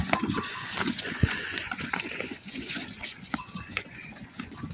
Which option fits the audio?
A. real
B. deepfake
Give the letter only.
B